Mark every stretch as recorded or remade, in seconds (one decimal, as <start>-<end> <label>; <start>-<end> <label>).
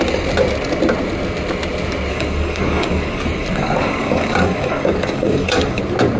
0.0-2.1 recorded; 2.1-5.8 remade; 5.8-6.2 recorded